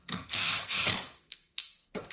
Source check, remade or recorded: remade